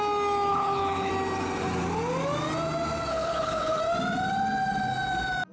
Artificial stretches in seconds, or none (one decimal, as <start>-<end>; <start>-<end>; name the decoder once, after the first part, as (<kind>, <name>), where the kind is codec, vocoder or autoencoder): 0.5-1.1 (codec, HILCodec); 3.1-3.8